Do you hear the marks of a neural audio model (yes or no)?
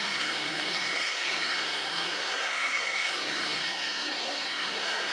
yes